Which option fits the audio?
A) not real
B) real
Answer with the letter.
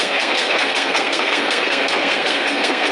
A